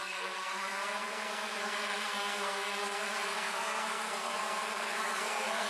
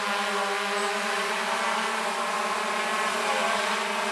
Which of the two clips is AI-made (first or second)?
first